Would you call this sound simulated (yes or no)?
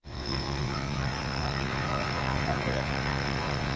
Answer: yes